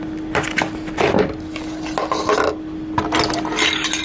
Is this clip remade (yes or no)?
no